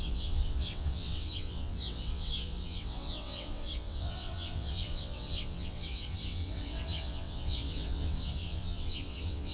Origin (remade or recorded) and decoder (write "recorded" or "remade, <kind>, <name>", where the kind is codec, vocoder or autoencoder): remade, vocoder, WaveNeXt